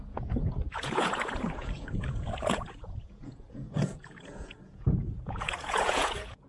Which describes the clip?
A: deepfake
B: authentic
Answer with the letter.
A